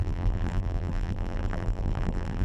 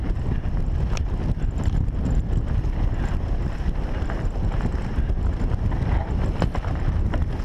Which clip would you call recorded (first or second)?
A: second